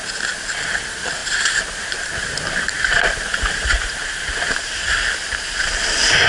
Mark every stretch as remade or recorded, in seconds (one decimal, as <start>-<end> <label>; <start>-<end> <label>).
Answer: 0.0-1.2 recorded; 1.2-5.0 remade; 5.0-6.3 recorded